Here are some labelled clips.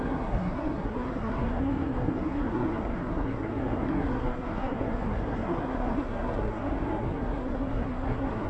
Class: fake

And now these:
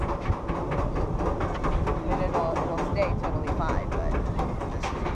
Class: real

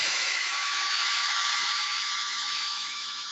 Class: fake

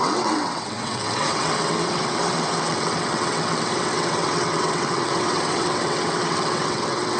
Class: fake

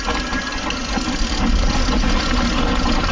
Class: real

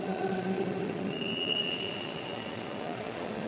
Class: fake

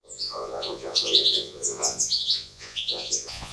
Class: fake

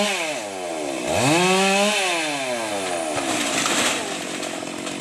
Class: real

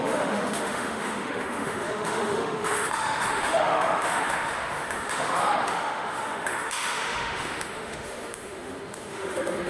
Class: fake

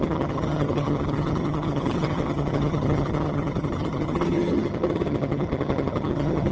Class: fake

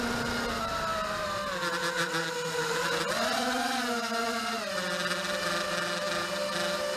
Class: real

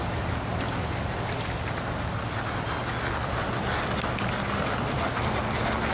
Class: real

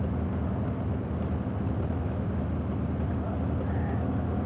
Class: real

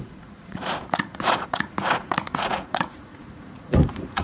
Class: fake